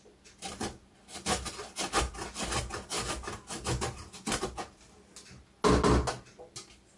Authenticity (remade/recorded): recorded